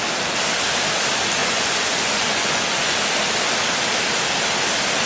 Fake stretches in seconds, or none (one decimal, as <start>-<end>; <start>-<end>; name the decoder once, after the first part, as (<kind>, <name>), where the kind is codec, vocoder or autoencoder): 1.4-3.0 (vocoder, Vocos)